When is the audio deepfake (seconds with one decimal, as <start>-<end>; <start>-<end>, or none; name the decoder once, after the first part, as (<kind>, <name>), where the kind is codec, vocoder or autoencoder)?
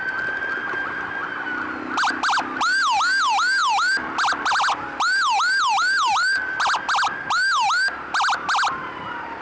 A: none